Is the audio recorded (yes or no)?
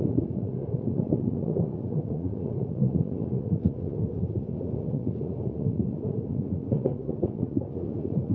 no